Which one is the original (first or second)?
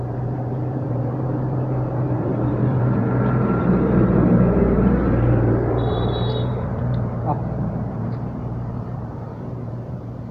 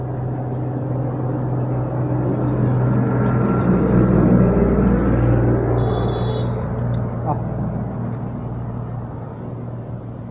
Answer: second